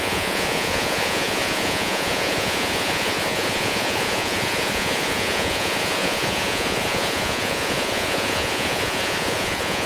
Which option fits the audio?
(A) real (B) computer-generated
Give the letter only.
B